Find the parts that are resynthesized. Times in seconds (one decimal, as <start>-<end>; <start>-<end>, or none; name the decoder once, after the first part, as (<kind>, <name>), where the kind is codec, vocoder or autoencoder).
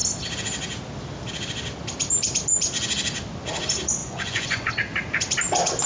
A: 4.0-4.7 (vocoder, Vocos)